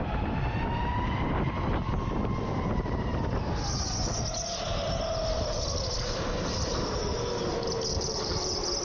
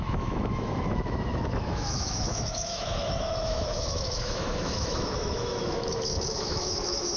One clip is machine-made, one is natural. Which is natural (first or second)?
first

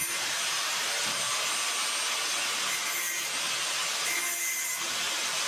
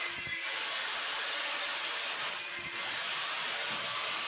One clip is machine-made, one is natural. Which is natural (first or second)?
first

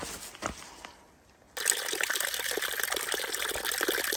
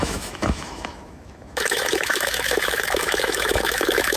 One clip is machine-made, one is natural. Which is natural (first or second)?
first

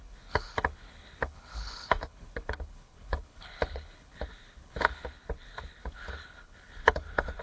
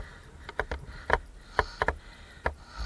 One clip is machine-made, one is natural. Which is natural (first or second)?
second